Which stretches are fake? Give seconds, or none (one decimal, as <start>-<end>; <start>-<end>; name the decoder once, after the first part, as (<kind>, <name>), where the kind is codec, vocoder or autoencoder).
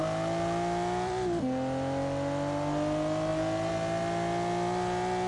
none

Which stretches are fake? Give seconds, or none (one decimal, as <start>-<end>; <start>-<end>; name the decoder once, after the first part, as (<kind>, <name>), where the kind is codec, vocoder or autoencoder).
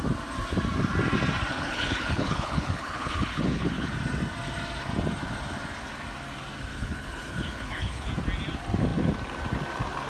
1.5-3.9 (codec, HILCodec); 6.7-8.1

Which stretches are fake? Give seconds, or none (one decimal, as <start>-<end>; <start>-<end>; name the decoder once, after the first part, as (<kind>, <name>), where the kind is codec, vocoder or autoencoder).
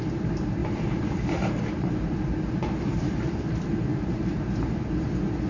0.6-3.2 (vocoder, BigVGAN v2); 3.9-4.7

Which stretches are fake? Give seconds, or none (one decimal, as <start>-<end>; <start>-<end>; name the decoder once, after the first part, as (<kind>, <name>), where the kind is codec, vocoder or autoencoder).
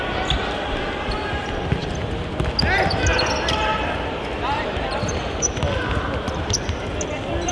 3.7-5.6 (vocoder, BigVGAN v2)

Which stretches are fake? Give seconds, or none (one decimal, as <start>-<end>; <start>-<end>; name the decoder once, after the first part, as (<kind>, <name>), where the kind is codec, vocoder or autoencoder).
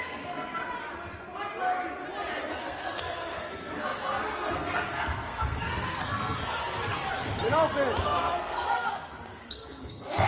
0.0-0.6 (codec, SNAC); 2.5-6.9; 8.0-10.3